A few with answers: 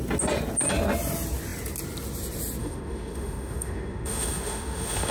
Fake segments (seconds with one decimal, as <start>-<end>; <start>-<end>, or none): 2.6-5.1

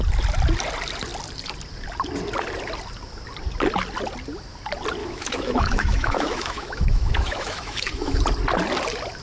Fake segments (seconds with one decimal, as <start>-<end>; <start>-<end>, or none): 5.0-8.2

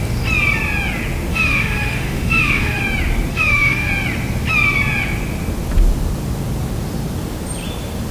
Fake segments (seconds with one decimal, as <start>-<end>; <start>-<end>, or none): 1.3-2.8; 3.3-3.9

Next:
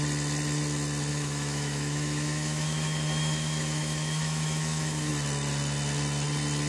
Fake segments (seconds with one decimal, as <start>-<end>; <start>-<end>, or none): 1.1-5.1